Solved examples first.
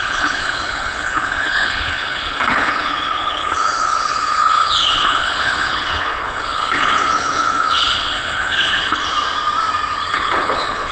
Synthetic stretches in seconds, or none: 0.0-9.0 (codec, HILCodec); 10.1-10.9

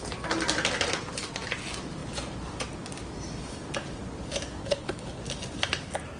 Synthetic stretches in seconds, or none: 4.6-5.2 (codec, HILCodec)